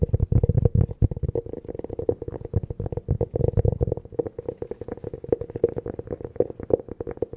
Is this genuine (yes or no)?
yes